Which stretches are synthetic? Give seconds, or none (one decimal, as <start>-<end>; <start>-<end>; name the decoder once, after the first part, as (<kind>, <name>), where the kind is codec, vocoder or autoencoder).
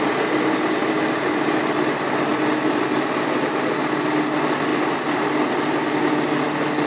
0.8-1.6 (vocoder, BigVGAN v2); 2.3-3.5